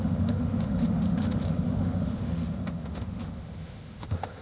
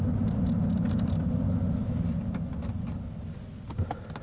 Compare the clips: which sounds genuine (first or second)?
second